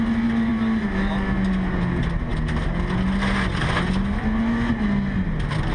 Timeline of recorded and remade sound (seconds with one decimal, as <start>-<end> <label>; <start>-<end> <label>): 0.0-5.7 recorded